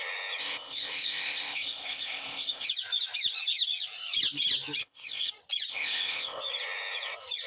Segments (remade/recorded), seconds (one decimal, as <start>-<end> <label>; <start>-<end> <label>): 0.0-0.4 recorded; 0.4-2.7 remade; 2.7-4.8 recorded; 4.8-5.3 remade; 5.3-5.7 recorded; 5.7-6.4 remade; 6.4-7.5 recorded